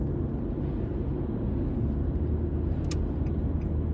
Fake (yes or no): no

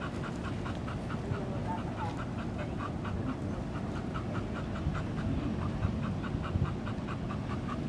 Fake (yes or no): no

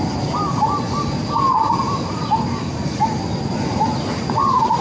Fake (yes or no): no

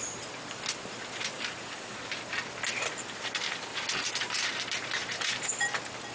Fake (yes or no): yes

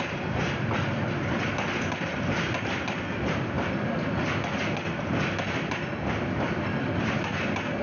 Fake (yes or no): no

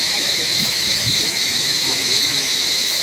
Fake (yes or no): yes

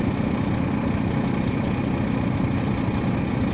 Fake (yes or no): no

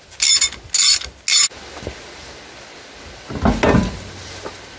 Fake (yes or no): no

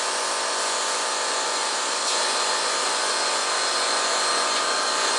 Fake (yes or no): yes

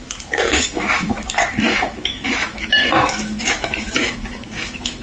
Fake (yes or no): yes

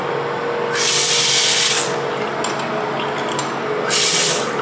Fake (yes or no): no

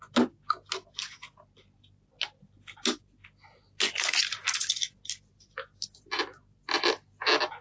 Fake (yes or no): no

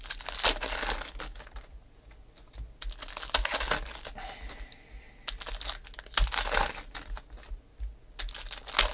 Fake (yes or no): no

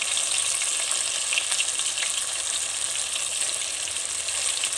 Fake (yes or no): no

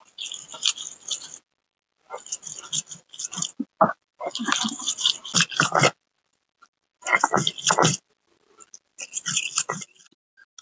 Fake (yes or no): no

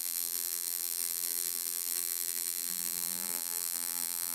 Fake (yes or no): yes